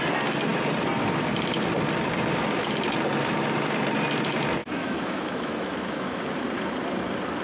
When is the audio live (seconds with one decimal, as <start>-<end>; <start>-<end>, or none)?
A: 0.0-4.6; 6.2-7.4